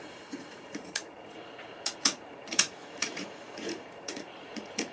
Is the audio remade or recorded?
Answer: remade